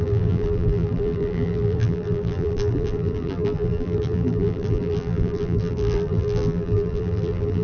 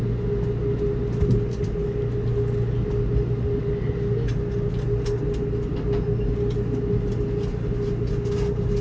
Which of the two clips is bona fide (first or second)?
second